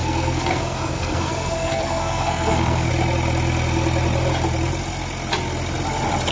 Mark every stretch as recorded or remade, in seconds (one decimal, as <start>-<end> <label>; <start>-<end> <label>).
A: 0.0-2.9 remade; 2.9-6.3 recorded